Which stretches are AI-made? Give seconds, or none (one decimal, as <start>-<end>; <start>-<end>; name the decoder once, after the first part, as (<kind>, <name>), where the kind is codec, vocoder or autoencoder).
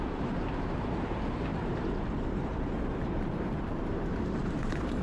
0.0-5.0 (vocoder, BigVGAN v2)